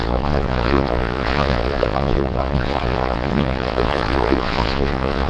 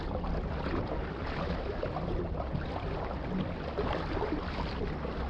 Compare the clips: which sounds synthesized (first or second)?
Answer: first